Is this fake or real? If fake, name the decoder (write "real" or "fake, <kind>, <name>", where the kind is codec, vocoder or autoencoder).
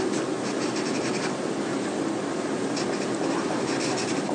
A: real